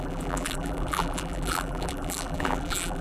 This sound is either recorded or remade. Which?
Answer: remade